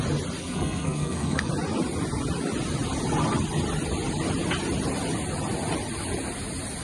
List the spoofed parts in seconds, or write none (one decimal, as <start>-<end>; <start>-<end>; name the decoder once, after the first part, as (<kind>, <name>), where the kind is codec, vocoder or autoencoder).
0.4-1.5 (codec, SNAC)